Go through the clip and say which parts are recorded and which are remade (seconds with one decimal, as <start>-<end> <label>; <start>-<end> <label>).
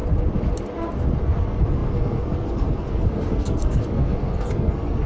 0.0-1.2 recorded; 1.2-5.1 remade